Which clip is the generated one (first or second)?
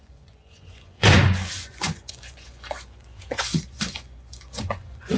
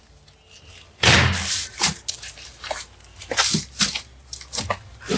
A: first